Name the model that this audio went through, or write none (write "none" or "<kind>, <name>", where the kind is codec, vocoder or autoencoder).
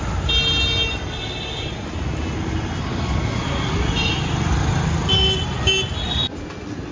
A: none